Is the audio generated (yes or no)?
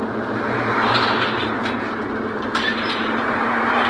yes